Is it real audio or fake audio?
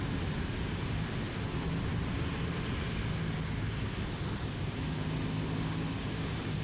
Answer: real